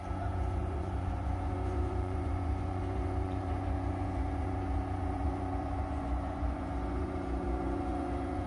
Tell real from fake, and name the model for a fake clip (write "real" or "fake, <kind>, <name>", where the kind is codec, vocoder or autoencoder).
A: fake, vocoder, Vocos